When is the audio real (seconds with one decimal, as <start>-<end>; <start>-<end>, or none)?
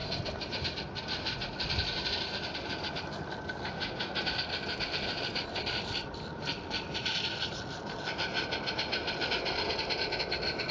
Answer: 0.0-10.7